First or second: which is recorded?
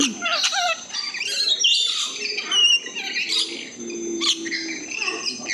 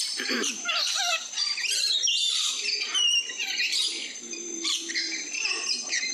first